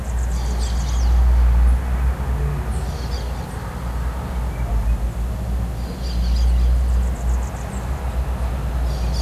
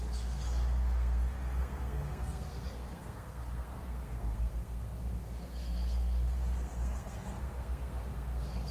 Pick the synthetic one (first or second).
second